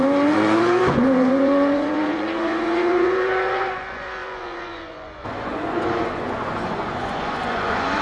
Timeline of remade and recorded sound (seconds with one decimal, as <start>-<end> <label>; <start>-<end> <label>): 0.0-8.0 remade